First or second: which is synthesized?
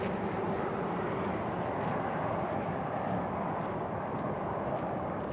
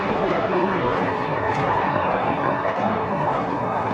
second